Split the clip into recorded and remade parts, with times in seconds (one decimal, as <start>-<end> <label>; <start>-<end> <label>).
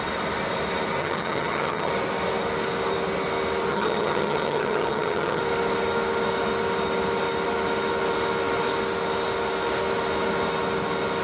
0.0-1.0 recorded; 1.0-1.9 remade; 1.9-3.7 recorded; 3.7-5.4 remade; 5.4-11.2 recorded